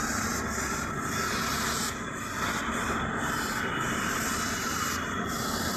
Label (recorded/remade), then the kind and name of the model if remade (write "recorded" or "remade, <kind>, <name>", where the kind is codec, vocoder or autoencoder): recorded